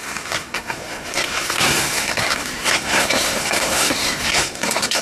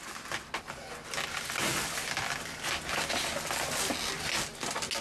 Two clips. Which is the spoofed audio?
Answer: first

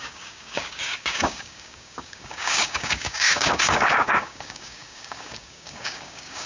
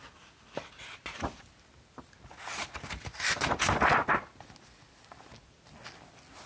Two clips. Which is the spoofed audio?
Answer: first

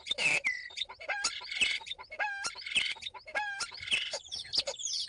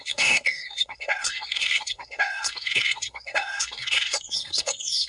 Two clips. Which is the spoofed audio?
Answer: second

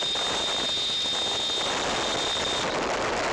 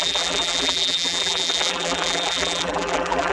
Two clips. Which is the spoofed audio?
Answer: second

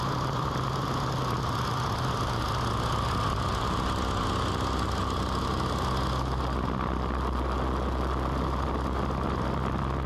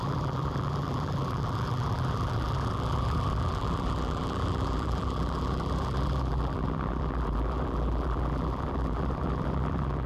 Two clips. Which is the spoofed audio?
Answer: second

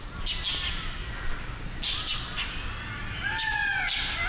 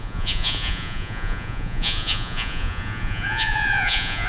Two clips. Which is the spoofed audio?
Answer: second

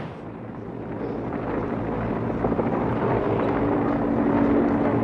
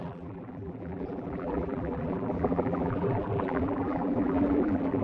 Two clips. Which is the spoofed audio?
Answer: second